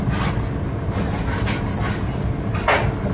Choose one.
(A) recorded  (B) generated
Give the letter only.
A